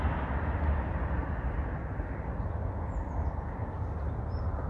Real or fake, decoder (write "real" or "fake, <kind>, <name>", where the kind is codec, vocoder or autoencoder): real